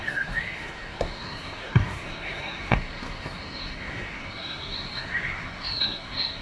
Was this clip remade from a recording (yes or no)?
yes